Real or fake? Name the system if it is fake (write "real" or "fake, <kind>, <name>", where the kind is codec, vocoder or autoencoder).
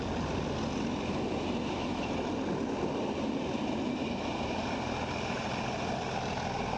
real